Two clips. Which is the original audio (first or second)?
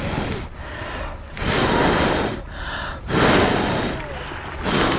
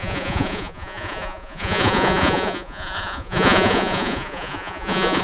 first